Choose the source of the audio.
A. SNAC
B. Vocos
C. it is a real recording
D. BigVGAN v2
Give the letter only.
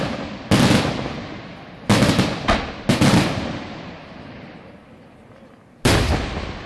C